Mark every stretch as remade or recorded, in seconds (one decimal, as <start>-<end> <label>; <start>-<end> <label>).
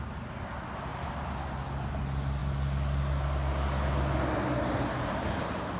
0.0-5.8 recorded